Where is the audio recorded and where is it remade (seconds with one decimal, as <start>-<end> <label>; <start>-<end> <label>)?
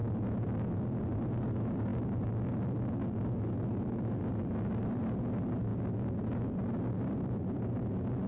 0.0-8.3 recorded